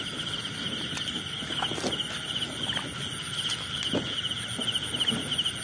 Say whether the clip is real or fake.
real